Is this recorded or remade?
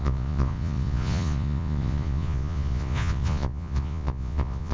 remade